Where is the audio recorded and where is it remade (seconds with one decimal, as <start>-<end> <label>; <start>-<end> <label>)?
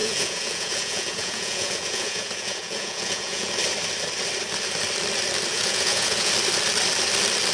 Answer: 0.0-3.5 remade; 3.5-5.5 recorded; 5.5-6.3 remade; 6.3-7.5 recorded